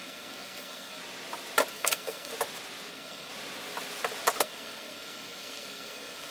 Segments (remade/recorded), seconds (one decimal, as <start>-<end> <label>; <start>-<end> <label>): 0.0-1.0 remade; 1.0-1.7 recorded; 1.7-2.3 remade; 2.3-2.9 recorded; 2.9-3.3 remade; 3.3-4.4 recorded; 4.4-6.3 remade